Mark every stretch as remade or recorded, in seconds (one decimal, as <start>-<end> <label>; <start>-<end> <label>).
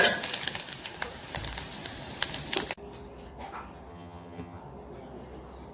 0.0-3.9 recorded; 3.9-4.6 remade; 4.6-5.7 recorded